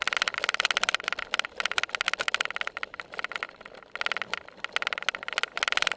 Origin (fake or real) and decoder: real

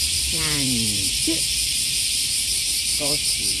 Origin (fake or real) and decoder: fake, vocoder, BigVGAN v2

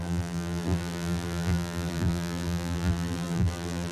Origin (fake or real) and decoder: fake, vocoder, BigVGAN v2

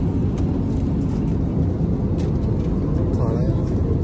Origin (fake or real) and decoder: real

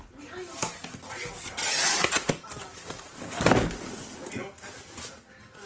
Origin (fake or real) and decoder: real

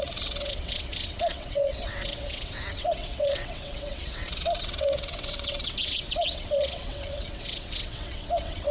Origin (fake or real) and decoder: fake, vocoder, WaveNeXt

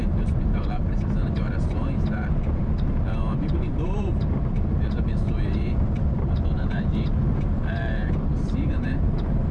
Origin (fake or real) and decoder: fake, vocoder, BigVGAN v2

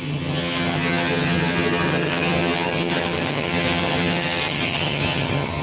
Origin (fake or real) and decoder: fake, vocoder, HiFi-GAN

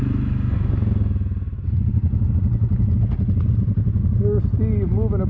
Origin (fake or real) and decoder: real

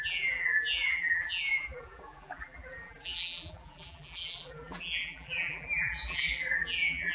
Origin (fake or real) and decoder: fake, vocoder, BigVGAN v2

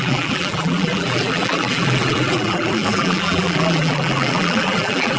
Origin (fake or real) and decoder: fake, vocoder, BigVGAN v2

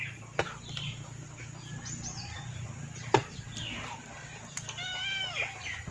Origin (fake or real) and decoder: real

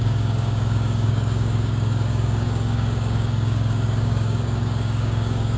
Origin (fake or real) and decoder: fake, codec, DAC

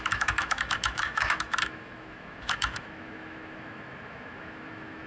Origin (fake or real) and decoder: fake, autoencoder, DAC-VAE